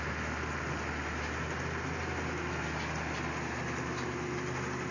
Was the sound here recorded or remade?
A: recorded